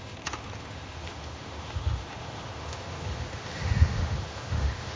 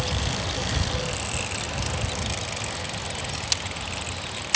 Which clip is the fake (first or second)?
first